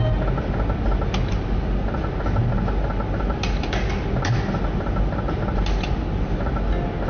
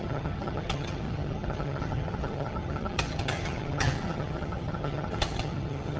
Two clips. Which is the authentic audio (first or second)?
first